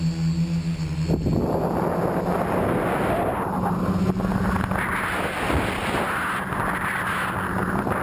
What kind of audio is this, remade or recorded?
recorded